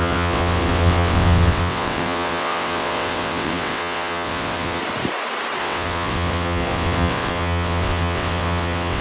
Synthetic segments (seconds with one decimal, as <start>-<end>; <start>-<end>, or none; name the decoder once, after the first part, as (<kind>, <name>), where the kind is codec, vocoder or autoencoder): 0.0-4.8 (vocoder, WaveNeXt); 5.6-9.0